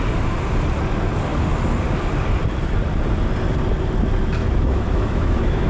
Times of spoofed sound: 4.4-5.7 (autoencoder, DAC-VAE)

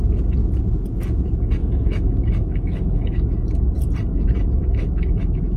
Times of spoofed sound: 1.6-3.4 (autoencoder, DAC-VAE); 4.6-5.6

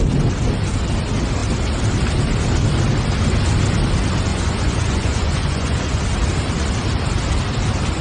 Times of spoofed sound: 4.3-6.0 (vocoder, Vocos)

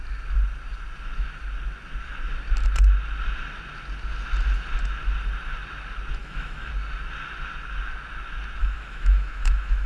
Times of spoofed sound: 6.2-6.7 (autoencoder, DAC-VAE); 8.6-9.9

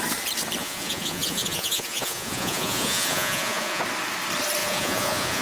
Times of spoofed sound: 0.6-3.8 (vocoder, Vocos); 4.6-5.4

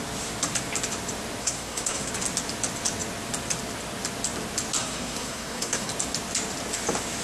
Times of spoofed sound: 1.4-2.1 (codec, SNAC); 4.8-5.9